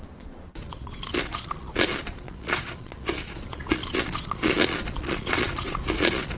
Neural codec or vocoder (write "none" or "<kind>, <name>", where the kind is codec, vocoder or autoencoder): vocoder, Vocos